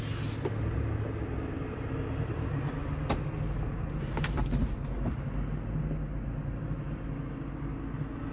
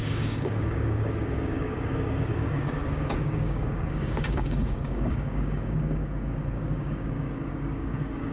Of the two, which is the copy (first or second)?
second